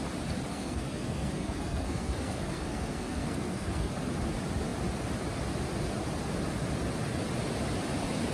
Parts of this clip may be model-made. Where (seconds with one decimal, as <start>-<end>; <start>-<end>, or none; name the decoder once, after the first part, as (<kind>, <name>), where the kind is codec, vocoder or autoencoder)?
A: 0.5-3.9 (codec, SNAC)